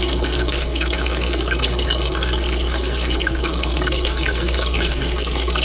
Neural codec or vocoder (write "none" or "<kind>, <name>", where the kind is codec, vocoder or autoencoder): codec, SNAC